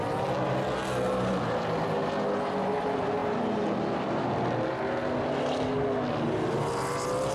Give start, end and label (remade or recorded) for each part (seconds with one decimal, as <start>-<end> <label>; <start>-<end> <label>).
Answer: 0.0-7.3 recorded